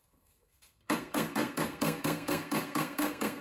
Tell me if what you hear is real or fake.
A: fake